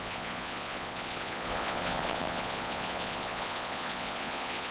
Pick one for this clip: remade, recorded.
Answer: remade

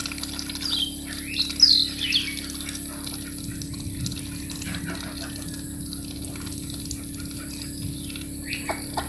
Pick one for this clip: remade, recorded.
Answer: recorded